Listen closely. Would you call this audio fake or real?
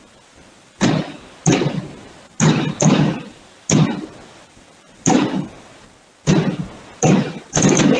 real